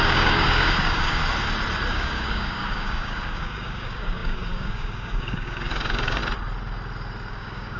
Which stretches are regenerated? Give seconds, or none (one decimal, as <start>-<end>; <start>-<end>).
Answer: 0.0-1.2; 1.9-6.2; 7.3-7.8